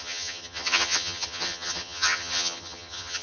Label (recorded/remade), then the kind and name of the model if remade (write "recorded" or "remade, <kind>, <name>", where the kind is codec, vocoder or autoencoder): remade, vocoder, HiFi-GAN